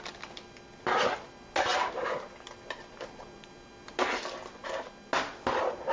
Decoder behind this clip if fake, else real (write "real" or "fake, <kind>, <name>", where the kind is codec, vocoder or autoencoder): real